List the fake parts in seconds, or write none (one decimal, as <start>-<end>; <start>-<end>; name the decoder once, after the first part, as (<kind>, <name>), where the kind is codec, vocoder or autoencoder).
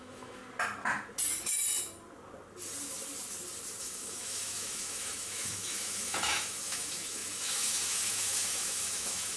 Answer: 0.0-0.4 (autoencoder, DAC-VAE); 3.8-9.4